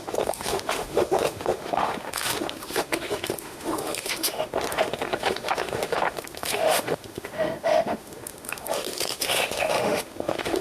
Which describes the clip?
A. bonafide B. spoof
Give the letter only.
B